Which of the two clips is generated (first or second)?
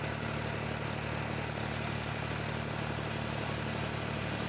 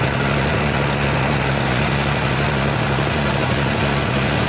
second